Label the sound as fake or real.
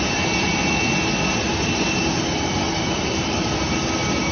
real